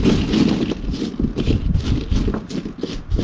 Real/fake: real